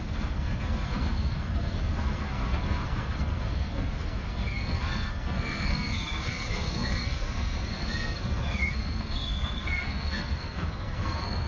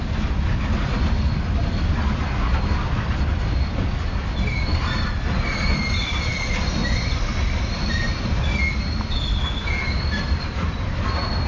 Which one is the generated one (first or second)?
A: first